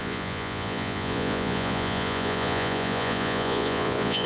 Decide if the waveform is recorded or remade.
remade